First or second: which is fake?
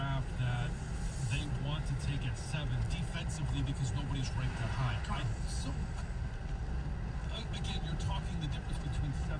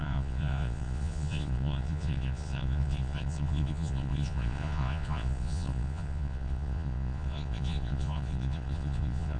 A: second